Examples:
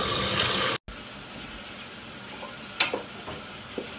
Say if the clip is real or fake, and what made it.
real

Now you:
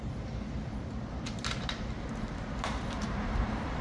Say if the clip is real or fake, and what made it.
fake, vocoder, BigVGAN v2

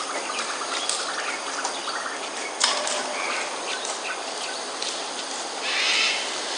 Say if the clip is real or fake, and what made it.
real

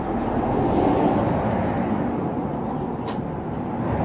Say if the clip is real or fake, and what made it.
real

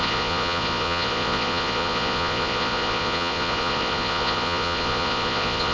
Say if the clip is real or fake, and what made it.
fake, vocoder, Vocos